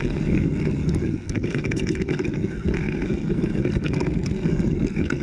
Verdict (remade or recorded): remade